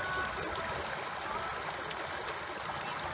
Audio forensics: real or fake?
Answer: real